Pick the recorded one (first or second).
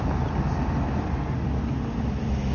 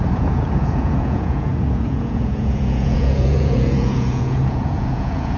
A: first